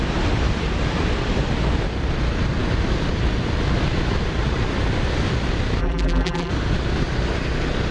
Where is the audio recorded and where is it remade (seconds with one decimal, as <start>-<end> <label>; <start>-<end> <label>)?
0.0-5.8 recorded; 5.8-6.5 remade; 6.5-7.9 recorded